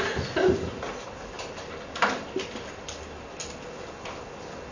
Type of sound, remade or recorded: recorded